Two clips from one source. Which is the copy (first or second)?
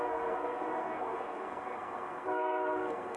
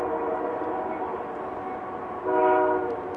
first